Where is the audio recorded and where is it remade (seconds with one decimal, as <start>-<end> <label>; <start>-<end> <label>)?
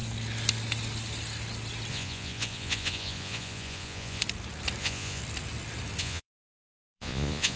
0.0-1.9 recorded; 1.9-4.2 remade; 4.2-4.8 recorded; 4.8-5.2 remade; 5.2-6.0 recorded; 6.0-7.6 remade